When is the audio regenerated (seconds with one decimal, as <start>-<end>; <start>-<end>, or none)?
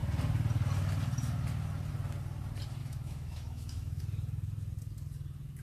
2.8-4.0